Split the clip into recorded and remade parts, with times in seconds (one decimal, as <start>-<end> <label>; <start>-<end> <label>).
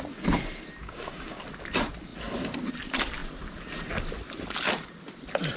0.0-0.8 recorded; 0.8-1.4 remade; 1.4-5.6 recorded